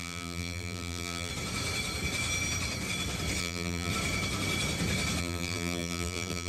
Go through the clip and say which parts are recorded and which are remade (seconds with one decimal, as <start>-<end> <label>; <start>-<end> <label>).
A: 0.0-1.3 remade; 1.3-3.4 recorded; 3.4-3.9 remade; 3.9-5.2 recorded; 5.2-6.5 remade